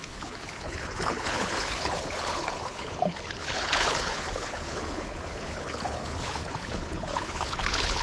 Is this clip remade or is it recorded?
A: remade